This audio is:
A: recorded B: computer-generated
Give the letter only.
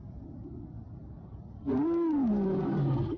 A